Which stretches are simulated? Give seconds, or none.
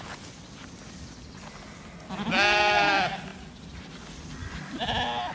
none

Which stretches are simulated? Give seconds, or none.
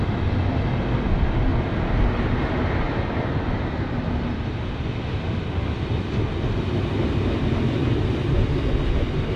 1.5-5.2